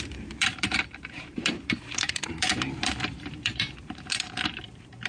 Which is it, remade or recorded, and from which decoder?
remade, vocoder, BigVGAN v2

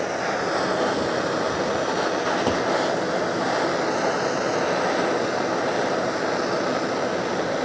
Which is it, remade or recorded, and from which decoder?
recorded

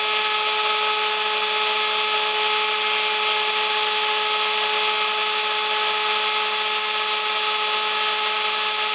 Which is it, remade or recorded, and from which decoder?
recorded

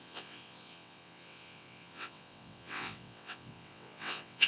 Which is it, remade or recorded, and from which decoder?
remade, vocoder, WaveNeXt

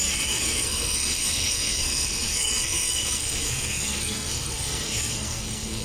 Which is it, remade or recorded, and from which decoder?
remade, codec, SNAC